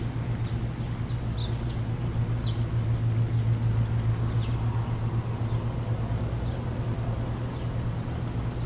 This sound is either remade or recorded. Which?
recorded